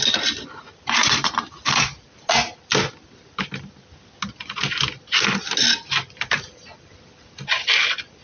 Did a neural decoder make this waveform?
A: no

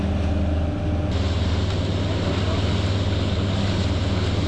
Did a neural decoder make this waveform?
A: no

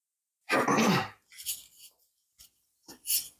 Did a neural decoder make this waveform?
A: no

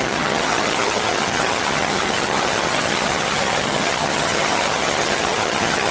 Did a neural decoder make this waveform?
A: yes